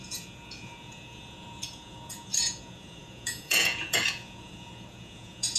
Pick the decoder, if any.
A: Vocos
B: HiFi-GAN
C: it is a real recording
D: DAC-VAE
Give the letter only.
A